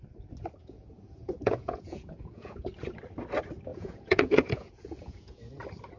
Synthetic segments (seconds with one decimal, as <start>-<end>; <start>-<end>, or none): 0.6-2.7; 3.7-5.4